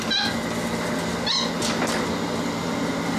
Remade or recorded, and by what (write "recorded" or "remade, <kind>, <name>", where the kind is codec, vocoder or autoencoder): recorded